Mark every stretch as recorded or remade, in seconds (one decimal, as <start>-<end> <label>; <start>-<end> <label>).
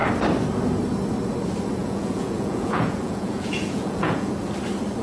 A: 0.0-1.8 recorded; 1.8-4.3 remade; 4.3-5.0 recorded